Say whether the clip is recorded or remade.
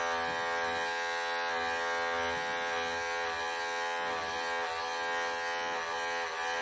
recorded